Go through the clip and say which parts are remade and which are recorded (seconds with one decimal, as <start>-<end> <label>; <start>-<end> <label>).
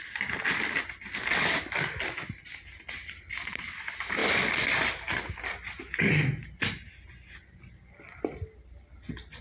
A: 0.0-9.4 recorded